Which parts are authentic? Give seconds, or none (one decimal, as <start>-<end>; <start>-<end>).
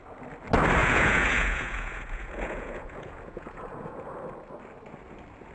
0.0-0.8; 4.1-5.5